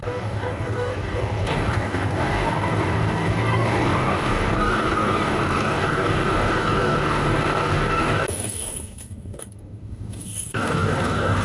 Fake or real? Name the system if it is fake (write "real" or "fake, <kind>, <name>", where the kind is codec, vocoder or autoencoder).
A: fake, codec, DAC